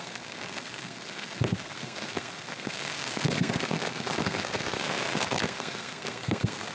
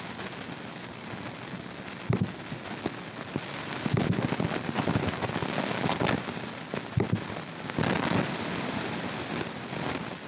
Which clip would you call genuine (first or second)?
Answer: second